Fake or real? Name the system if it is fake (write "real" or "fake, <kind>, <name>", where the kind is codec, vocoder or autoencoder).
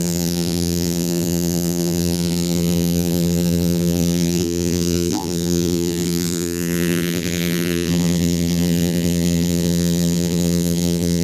fake, vocoder, BigVGAN v2